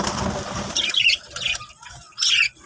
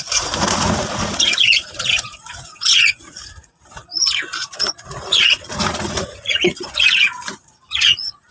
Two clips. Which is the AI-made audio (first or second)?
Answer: second